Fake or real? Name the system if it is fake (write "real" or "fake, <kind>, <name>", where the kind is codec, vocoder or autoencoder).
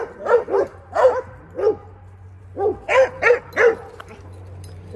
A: real